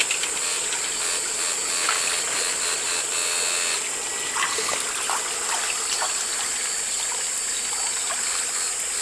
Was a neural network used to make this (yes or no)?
no